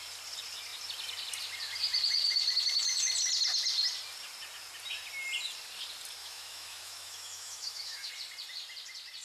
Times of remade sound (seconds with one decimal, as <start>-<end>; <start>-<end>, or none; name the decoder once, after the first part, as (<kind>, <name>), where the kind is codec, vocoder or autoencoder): 6.2-8.1 (autoencoder, DAC-VAE)

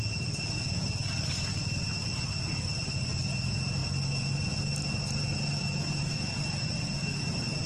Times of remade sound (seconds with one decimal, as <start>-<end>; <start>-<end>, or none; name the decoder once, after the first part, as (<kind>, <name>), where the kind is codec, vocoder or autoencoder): none

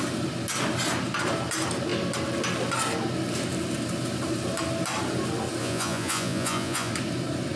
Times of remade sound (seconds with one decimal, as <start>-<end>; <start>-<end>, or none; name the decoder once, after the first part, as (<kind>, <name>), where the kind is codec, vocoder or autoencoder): 5.6-6.9 (vocoder, Vocos)

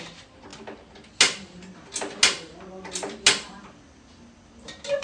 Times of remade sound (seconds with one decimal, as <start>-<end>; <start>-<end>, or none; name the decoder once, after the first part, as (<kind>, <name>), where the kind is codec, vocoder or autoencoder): none